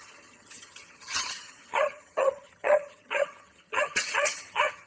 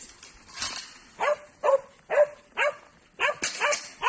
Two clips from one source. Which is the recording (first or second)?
second